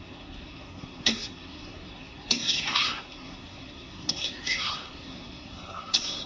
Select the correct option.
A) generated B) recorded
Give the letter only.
A